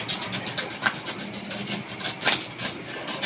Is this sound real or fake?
real